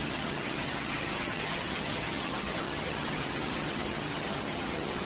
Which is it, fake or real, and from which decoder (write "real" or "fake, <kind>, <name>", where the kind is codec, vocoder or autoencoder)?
fake, vocoder, HiFi-GAN